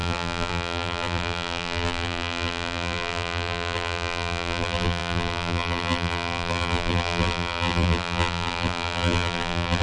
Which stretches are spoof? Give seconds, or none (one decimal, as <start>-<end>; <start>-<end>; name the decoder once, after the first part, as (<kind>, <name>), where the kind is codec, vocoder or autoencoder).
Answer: 0.0-9.8 (vocoder, BigVGAN v2)